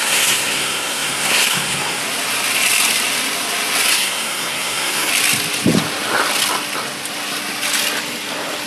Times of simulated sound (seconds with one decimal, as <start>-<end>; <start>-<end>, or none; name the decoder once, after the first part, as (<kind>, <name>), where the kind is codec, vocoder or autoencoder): 0.0-2.0 (codec, SNAC); 3.9-5.1